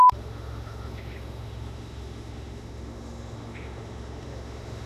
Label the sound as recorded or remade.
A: remade